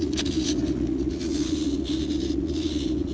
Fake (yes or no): yes